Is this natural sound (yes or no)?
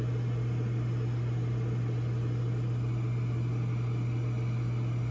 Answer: yes